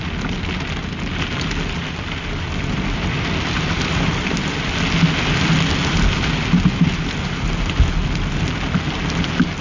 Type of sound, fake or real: real